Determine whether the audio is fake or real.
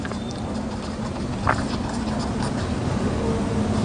real